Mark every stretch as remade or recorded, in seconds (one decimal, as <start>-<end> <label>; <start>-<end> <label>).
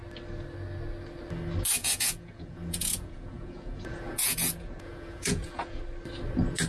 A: 0.0-1.8 recorded; 1.8-5.8 remade; 5.8-6.7 recorded